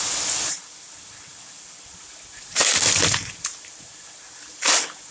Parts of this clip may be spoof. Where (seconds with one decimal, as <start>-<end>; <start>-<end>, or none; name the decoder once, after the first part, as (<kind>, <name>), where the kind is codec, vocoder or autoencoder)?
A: none